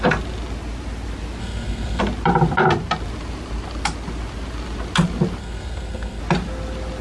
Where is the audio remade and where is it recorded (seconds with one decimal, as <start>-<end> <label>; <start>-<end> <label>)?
0.0-1.4 recorded; 1.4-2.0 remade; 2.0-5.4 recorded; 5.4-6.2 remade; 6.2-7.0 recorded